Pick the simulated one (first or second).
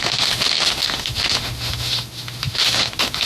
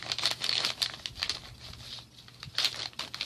first